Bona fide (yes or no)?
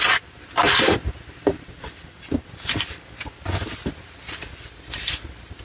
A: yes